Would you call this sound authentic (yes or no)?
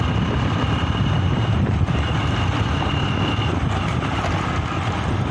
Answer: yes